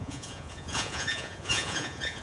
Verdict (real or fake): fake